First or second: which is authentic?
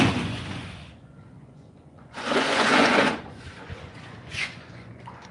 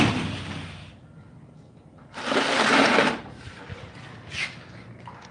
second